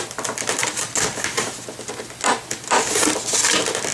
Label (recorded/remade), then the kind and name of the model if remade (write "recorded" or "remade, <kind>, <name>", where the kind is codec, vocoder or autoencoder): recorded